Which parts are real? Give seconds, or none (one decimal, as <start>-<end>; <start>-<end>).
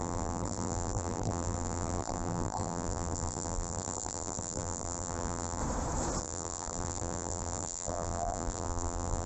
5.6-6.2